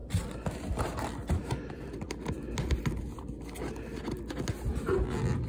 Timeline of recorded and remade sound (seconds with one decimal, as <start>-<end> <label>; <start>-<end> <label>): 0.0-2.3 remade; 2.3-5.5 recorded